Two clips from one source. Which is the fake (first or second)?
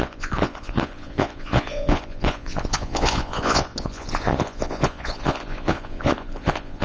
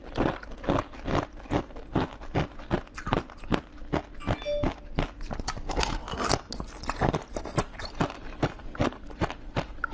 first